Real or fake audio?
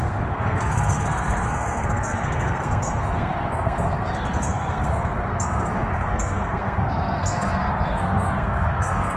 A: fake